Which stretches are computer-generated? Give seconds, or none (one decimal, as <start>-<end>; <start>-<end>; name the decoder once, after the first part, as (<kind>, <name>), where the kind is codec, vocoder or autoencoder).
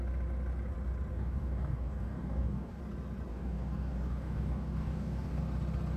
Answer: 1.1-2.8 (codec, DAC); 3.3-5.4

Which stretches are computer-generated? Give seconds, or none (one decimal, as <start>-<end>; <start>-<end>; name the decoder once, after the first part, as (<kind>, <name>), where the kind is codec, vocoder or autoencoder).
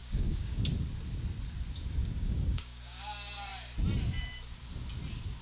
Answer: 0.0-0.6 (codec, DAC); 2.0-3.0